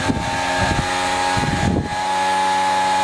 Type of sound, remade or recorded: recorded